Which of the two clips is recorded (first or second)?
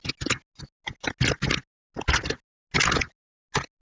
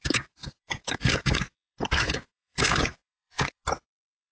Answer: first